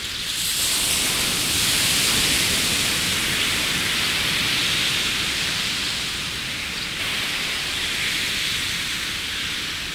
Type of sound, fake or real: fake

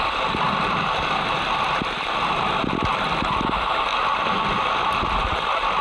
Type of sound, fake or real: real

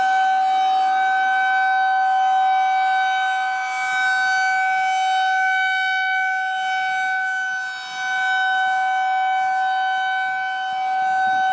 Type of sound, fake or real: real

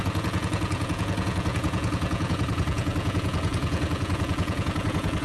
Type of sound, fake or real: fake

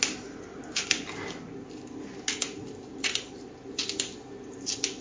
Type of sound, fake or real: real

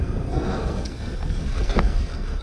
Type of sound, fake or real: fake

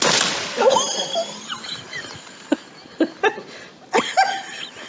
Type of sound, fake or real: real